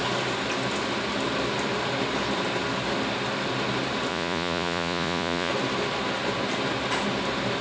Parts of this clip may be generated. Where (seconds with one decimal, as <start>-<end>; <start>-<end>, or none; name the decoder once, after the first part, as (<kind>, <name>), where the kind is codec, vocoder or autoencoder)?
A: 4.1-5.5 (vocoder, Vocos)